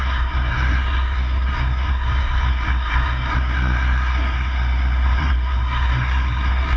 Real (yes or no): no